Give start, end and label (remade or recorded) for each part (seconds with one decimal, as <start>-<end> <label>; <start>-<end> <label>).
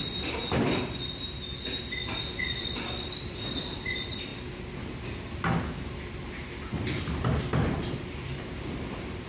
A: 0.0-2.4 recorded; 2.4-4.3 remade; 4.3-7.4 recorded; 7.4-9.3 remade